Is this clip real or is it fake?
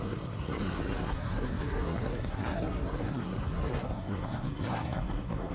fake